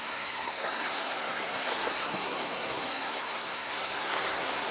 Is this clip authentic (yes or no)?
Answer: no